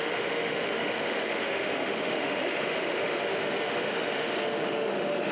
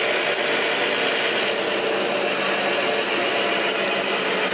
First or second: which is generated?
first